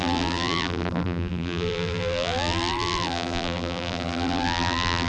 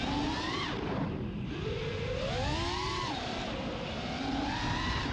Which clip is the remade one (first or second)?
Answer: first